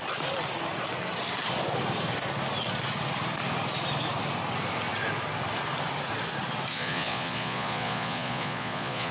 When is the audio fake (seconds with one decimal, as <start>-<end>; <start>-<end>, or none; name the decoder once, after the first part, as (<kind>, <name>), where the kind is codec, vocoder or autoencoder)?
6.7-9.1 (vocoder, Vocos)